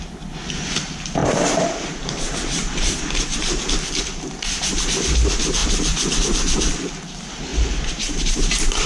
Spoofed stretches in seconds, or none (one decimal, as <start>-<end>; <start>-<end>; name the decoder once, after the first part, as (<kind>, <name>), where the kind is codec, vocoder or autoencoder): 1.2-3.0 (vocoder, BigVGAN v2); 7.5-8.9